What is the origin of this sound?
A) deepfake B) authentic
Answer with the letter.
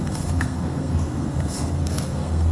A